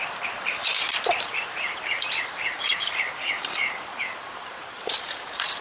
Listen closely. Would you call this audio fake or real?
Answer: fake